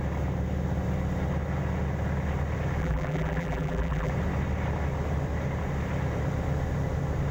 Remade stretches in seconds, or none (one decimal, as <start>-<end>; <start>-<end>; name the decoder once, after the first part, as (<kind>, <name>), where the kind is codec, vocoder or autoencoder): 2.8-4.1 (vocoder, BigVGAN v2)